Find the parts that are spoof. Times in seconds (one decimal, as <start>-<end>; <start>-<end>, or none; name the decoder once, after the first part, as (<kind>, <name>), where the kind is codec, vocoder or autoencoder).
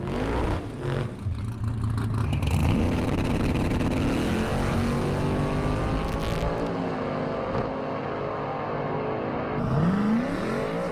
2.6-4.0 (vocoder, BigVGAN v2)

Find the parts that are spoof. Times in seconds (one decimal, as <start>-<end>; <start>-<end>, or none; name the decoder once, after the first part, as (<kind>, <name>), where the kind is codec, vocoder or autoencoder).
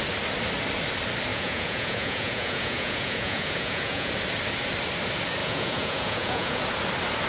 1.3-4.1 (vocoder, Vocos); 5.4-6.6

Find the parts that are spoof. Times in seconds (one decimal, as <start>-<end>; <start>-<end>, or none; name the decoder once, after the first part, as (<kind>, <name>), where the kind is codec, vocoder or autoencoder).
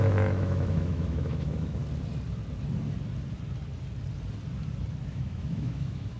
0.0-1.8 (autoencoder, DAC-VAE); 5.1-6.2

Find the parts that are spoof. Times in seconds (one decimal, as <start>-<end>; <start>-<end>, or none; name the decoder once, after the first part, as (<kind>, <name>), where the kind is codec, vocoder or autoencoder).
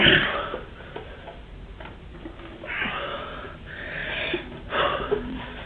0.0-2.1 (vocoder, BigVGAN v2); 3.4-5.7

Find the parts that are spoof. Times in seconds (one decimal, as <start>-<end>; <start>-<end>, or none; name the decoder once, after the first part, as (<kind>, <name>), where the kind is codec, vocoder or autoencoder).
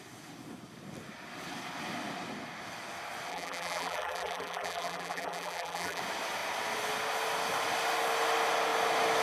3.3-6.0 (vocoder, BigVGAN v2)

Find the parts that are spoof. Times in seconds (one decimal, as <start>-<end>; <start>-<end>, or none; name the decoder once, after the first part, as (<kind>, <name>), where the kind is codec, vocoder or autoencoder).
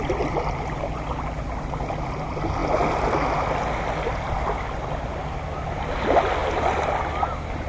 none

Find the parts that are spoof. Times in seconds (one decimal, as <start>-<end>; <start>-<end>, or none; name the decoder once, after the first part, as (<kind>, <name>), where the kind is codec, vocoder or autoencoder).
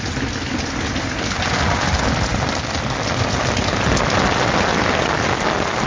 none